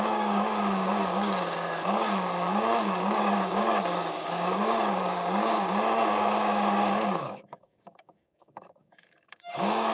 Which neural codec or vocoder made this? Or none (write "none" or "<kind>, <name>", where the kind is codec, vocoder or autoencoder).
codec, DAC